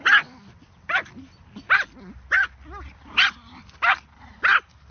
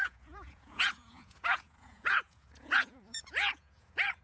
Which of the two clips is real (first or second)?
first